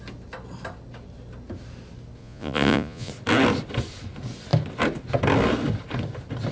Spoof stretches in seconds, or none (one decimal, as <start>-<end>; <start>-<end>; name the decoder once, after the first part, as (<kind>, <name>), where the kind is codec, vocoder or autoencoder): 2.2-3.1 (vocoder, Vocos)